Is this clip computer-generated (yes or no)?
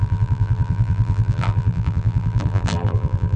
yes